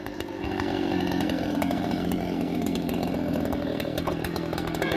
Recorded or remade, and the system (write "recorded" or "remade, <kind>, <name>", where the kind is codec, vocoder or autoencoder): remade, codec, SNAC